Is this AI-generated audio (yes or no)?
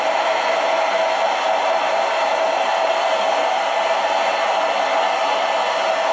no